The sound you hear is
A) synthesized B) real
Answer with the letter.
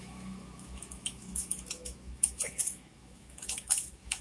A